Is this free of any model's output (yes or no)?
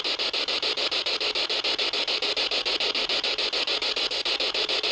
yes